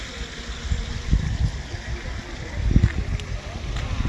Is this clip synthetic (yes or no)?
no